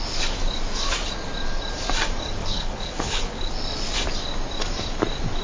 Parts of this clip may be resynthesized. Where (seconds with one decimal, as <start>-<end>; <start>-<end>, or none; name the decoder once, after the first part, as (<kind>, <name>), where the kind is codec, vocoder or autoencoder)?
2.4-3.5 (codec, HILCodec)